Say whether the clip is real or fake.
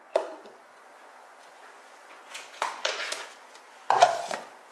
fake